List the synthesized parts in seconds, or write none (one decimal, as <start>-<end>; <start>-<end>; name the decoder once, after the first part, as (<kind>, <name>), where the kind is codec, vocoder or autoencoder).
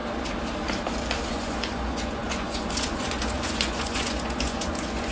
1.3-5.1 (vocoder, Vocos)